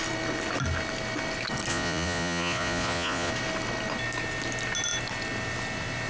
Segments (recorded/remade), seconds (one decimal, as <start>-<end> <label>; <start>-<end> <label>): 0.0-1.7 recorded; 1.7-3.3 remade; 3.3-6.1 recorded